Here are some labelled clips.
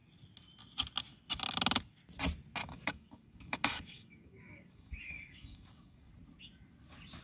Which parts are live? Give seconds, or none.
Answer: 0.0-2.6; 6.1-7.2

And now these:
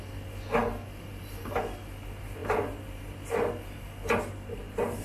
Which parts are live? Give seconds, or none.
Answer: 0.0-5.0

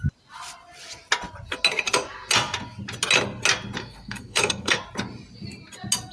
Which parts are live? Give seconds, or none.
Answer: 0.0-3.8; 4.8-6.1

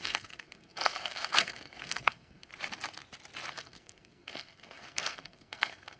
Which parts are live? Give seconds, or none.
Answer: 2.5-3.5

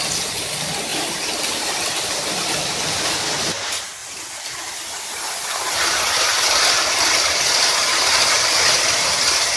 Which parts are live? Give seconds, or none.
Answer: 0.0-0.9; 2.1-4.0; 7.2-9.6

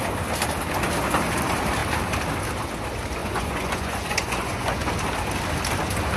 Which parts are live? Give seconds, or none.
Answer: 0.0-3.2; 4.9-6.2

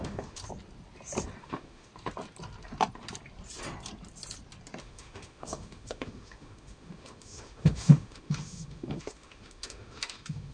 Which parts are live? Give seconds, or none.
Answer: 0.4-1.4; 1.9-4.8